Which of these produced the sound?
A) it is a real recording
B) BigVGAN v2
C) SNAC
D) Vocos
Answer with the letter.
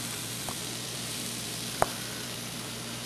B